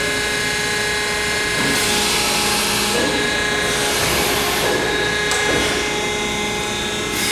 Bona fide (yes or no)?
yes